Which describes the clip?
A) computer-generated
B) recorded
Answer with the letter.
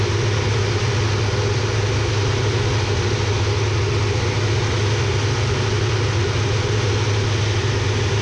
B